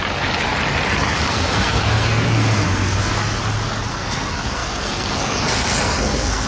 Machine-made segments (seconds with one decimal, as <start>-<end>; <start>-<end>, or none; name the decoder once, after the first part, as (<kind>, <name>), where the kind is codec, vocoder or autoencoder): 1.3-3.1 (codec, SNAC); 3.9-6.5